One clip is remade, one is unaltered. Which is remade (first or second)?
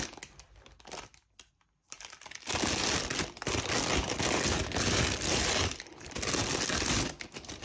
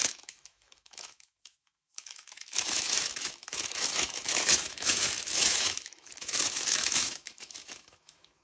second